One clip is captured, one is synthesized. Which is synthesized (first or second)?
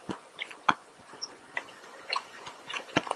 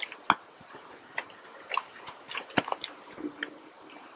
first